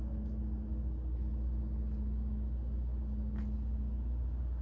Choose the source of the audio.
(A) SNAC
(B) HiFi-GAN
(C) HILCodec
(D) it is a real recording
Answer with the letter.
D